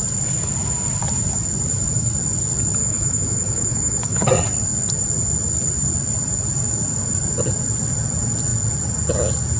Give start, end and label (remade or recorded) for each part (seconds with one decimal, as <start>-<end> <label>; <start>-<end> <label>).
0.0-2.8 recorded; 2.8-4.3 remade; 4.3-9.6 recorded